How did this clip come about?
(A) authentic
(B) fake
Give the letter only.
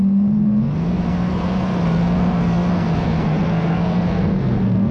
B